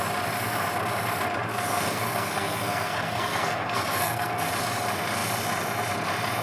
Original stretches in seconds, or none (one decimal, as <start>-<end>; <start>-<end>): 0.0-1.5; 4.5-6.4

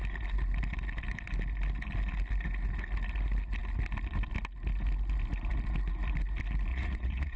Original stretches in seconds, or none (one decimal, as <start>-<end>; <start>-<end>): 0.0-6.7

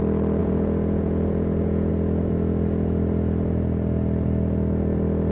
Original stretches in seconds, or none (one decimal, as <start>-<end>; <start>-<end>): 0.0-0.4; 1.9-5.3

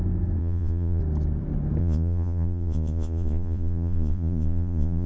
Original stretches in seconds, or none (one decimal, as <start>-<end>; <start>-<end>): 0.0-0.4; 1.0-1.8

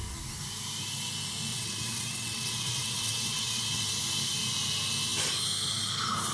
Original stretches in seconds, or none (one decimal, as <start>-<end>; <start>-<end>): 0.0-1.5; 3.9-6.3

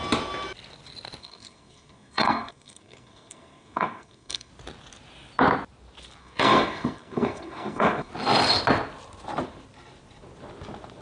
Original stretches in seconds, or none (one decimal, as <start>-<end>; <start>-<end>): 0.0-1.2; 4.5-6.2; 8.1-11.0

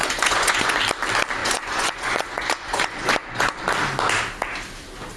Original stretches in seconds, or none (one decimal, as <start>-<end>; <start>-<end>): 0.8-1.4; 3.6-5.2